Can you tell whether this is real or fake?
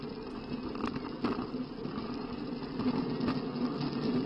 real